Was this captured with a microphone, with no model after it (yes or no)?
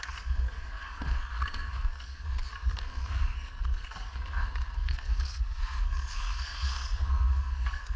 no